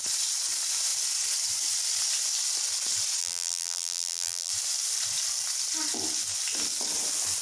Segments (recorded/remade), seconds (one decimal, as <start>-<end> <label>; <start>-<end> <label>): 0.0-3.2 recorded; 3.2-4.5 remade; 4.5-7.4 recorded